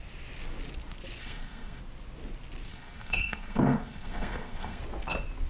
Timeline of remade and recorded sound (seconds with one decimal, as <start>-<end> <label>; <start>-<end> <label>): 0.0-1.2 recorded; 1.2-1.8 remade; 1.8-2.7 recorded; 2.7-4.8 remade; 4.8-5.5 recorded